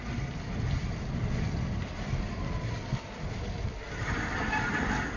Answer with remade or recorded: recorded